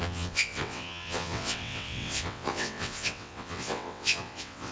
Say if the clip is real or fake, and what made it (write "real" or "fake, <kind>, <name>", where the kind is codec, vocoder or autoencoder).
fake, vocoder, WaveNeXt